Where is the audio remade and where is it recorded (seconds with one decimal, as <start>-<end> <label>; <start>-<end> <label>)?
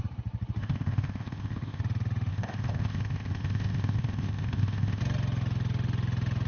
0.0-0.6 recorded; 0.6-1.8 remade; 1.8-2.3 recorded; 2.3-5.0 remade; 5.0-6.5 recorded